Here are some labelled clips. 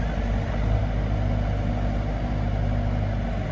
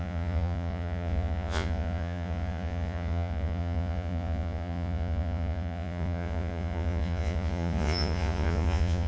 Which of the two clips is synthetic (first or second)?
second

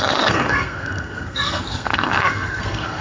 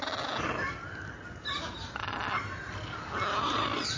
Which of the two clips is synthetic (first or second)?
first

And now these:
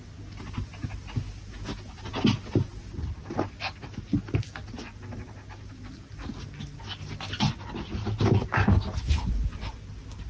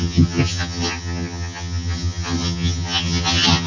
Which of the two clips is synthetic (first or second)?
second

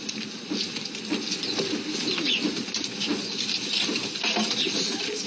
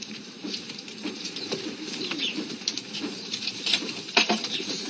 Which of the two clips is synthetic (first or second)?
second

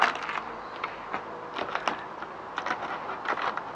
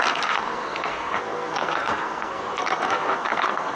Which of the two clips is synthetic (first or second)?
second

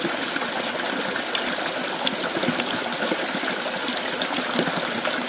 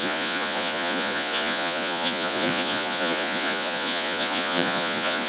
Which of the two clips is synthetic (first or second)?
second